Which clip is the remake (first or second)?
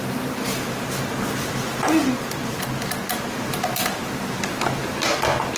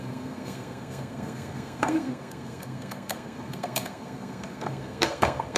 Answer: second